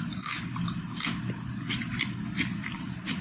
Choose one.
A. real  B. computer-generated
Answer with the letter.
A